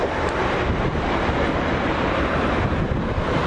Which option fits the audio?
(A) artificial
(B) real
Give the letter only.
A